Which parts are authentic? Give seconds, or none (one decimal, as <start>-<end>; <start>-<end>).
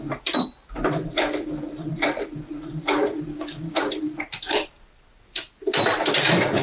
0.0-3.3; 3.9-6.6